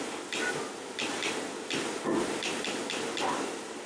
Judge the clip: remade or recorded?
recorded